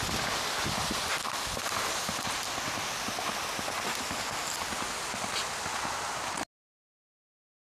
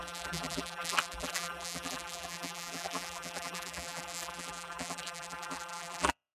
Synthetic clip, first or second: second